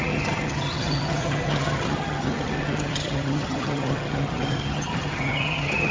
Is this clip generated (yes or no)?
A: yes